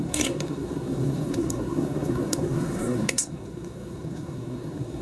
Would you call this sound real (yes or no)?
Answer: no